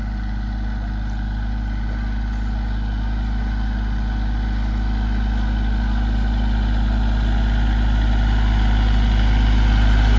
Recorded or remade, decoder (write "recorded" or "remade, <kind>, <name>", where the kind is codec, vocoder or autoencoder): recorded